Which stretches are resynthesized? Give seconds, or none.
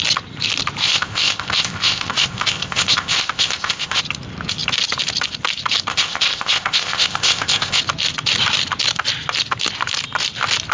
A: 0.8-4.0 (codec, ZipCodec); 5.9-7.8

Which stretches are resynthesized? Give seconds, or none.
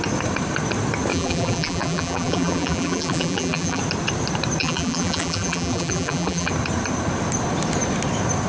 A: 1.1-3.8 (vocoder, BigVGAN v2); 4.6-6.5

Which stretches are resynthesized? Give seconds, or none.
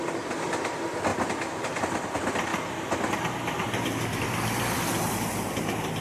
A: 0.0-2.5 (vocoder, BigVGAN v2); 3.1-6.0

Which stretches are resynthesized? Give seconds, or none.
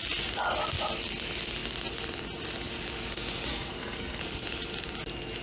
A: 3.5-4.2 (codec, SNAC)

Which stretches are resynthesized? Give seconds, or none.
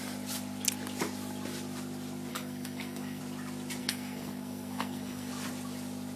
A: 2.3-3.2 (codec, SNAC); 3.8-5.3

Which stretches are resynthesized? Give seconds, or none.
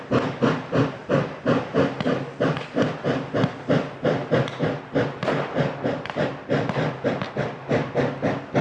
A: none